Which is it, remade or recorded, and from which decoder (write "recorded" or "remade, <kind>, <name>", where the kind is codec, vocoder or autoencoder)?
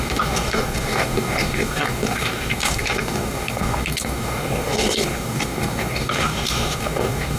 remade, codec, DAC